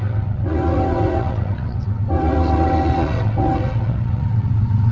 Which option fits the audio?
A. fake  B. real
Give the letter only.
A